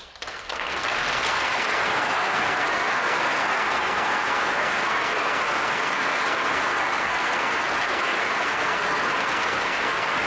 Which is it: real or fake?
fake